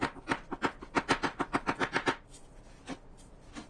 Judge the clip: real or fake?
real